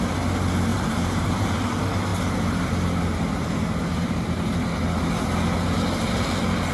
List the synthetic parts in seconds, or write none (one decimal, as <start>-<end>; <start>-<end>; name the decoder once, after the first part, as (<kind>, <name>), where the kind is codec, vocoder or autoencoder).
0.7-1.6 (vocoder, BigVGAN v2)